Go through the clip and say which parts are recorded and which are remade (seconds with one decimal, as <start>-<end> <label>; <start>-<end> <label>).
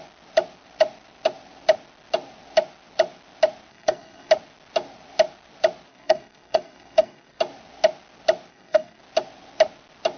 0.0-3.7 recorded; 3.7-4.3 remade; 4.3-5.9 recorded; 5.9-7.4 remade; 7.4-8.5 recorded; 8.5-9.0 remade; 9.0-10.2 recorded